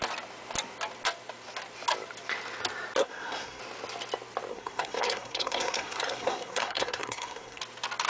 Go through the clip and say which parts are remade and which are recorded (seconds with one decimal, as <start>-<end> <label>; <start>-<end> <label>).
0.0-3.0 recorded; 3.0-3.6 remade; 3.6-4.5 recorded; 4.5-7.6 remade; 7.6-8.1 recorded